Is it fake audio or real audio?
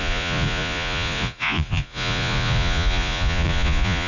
fake